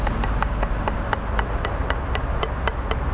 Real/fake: real